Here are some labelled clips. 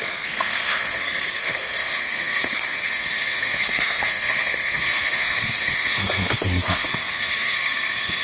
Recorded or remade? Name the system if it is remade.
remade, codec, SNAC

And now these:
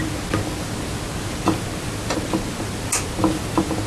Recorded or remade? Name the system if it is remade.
recorded